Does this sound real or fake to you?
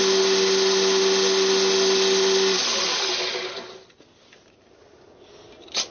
real